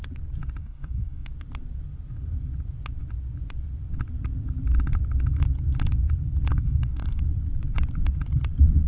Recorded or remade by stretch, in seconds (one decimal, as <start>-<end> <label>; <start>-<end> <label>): 0.0-0.6 recorded; 0.6-1.3 remade; 1.3-6.5 recorded; 6.5-7.2 remade; 7.2-8.9 recorded

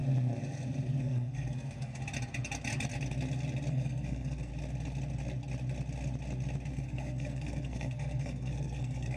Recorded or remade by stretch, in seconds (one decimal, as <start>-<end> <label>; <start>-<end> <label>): 0.0-1.0 recorded; 1.0-2.0 remade; 2.0-3.7 recorded; 3.7-4.5 remade; 4.5-6.7 recorded; 6.7-9.2 remade

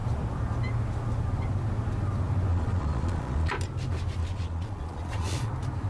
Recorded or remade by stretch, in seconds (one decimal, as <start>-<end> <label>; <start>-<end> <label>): 0.0-2.5 recorded; 2.5-3.5 remade; 3.5-4.2 recorded; 4.2-5.5 remade; 5.5-5.9 recorded

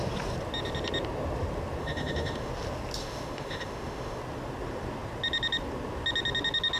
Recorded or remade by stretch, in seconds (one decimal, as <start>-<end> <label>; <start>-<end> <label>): 0.0-1.8 recorded; 1.8-2.5 remade; 2.5-3.0 recorded; 3.0-4.2 remade; 4.2-6.8 recorded

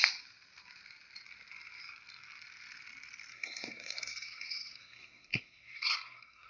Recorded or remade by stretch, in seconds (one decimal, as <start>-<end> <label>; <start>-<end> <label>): 0.0-3.3 recorded; 3.3-6.5 remade

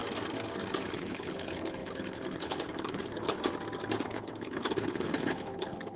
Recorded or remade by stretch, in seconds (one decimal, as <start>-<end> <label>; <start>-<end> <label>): 0.0-0.9 recorded; 0.9-3.4 remade; 3.4-4.0 recorded; 4.0-6.0 remade